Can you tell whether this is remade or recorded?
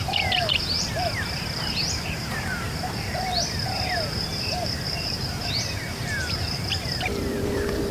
remade